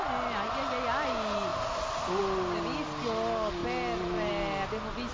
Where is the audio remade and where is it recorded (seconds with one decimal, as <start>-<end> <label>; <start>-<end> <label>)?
0.0-1.5 recorded; 1.5-2.2 remade; 2.2-5.1 recorded